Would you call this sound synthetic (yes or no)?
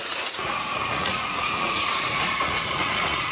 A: yes